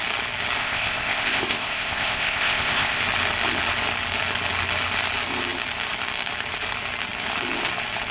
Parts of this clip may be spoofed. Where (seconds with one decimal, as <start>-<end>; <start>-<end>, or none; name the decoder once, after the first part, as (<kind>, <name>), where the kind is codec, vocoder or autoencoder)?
0.6-3.0 (codec, ZipCodec)